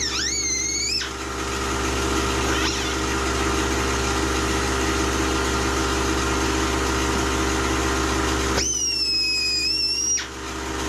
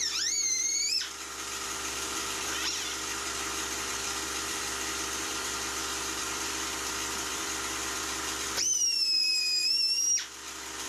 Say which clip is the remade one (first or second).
second